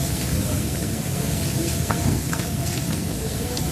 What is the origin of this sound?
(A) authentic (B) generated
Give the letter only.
B